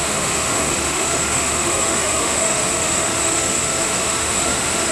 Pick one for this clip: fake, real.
fake